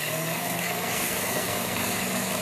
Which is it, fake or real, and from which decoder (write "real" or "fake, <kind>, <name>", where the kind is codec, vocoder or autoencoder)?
fake, codec, SNAC